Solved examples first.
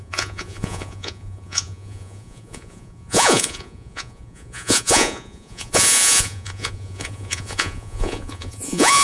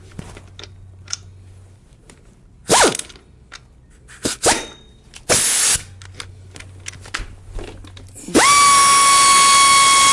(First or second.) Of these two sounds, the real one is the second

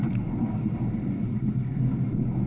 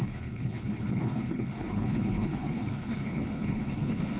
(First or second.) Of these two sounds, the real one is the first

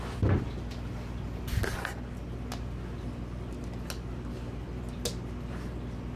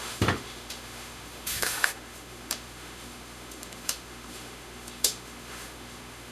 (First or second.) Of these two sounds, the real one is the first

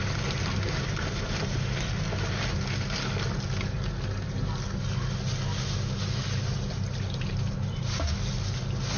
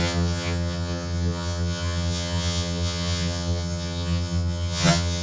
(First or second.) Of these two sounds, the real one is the first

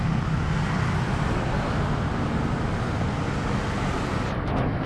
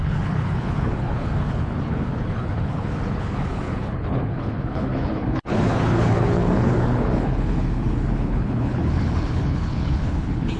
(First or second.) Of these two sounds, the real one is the first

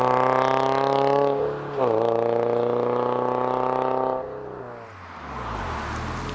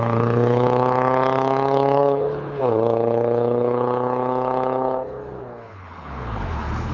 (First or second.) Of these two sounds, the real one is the first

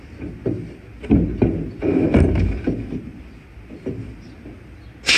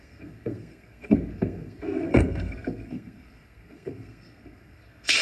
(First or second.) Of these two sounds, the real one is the first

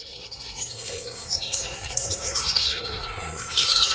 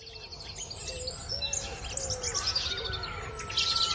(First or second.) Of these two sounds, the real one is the second